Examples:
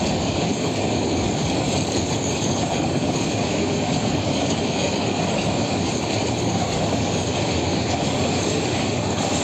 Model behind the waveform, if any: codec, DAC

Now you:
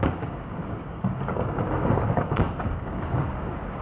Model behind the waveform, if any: codec, DAC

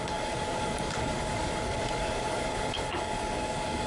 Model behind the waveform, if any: codec, DAC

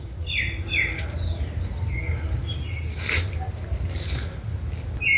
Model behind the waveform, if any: none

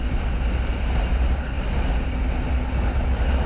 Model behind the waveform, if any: none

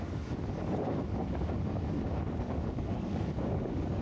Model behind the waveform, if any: codec, DAC